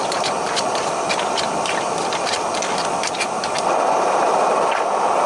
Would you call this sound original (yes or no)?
yes